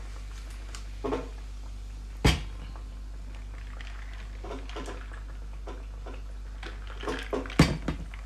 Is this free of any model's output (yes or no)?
yes